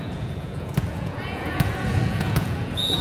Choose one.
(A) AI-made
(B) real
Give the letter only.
A